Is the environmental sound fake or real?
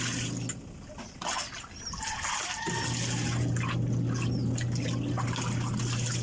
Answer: real